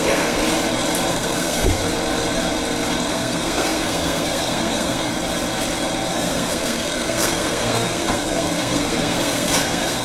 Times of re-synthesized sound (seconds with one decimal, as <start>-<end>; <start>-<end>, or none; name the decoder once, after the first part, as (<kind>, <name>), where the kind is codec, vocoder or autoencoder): 0.0-0.4 (codec, SNAC); 1.1-1.8; 3.1-5.1; 6.1-10.0